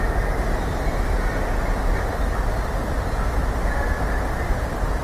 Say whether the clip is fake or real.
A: real